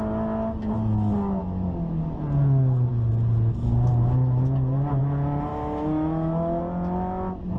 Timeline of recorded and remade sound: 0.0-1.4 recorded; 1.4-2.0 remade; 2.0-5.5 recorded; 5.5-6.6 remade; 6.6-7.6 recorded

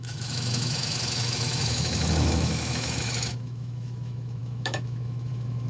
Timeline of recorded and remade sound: 0.0-5.7 remade

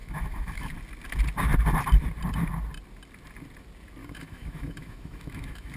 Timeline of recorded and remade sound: 0.0-0.7 remade; 0.7-4.0 recorded; 4.0-5.8 remade

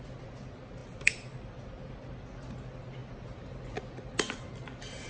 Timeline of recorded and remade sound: 0.0-5.1 recorded

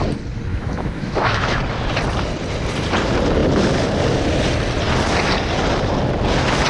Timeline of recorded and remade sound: 0.0-0.5 recorded; 0.5-1.6 remade; 1.6-6.7 recorded

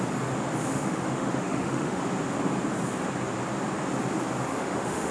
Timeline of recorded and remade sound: 0.0-0.7 recorded; 0.7-2.0 remade; 2.0-4.5 recorded; 4.5-5.1 remade

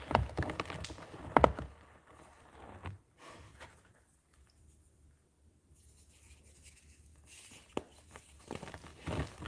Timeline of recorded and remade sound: 0.0-9.5 recorded

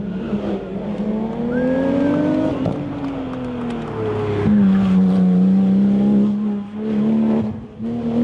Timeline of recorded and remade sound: 0.0-8.2 recorded